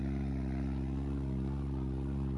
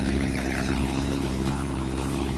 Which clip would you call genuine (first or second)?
first